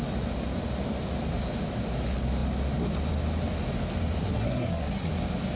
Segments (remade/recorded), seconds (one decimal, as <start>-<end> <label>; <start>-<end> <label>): 0.0-4.2 recorded; 4.2-5.1 remade; 5.1-5.6 recorded